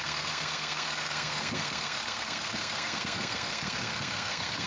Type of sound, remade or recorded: remade